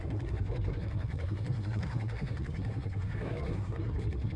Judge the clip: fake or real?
fake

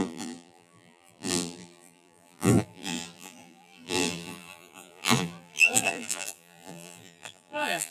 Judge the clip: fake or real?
fake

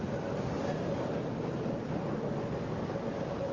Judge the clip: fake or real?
real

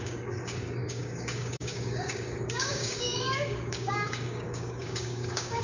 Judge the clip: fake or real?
fake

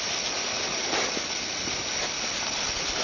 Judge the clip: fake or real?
real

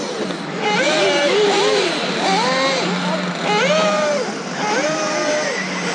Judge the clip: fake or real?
real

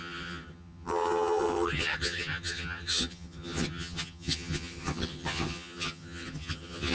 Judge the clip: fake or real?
fake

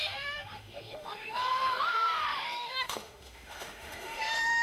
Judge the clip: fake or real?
fake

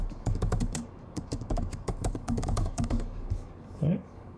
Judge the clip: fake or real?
fake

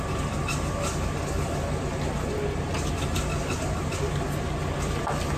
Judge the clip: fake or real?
real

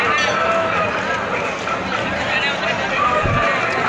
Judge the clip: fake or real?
real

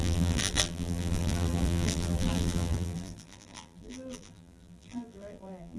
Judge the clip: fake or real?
fake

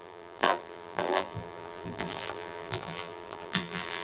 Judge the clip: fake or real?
fake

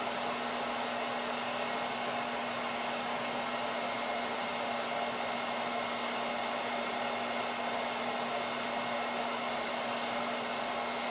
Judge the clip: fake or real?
real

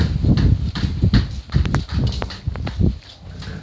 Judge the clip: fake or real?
real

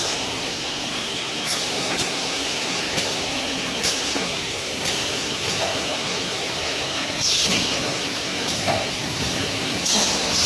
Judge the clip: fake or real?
fake